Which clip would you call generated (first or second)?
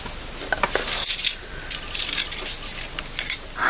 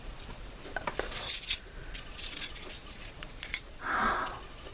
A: second